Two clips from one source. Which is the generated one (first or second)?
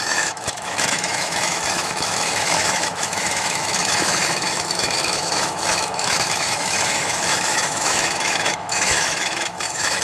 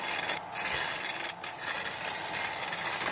first